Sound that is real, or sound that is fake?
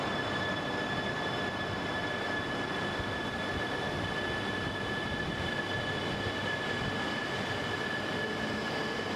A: real